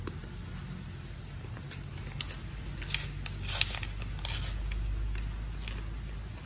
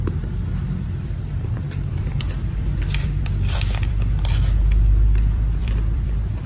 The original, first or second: first